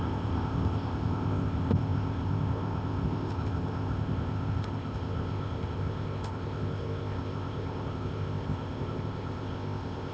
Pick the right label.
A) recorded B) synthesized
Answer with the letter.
B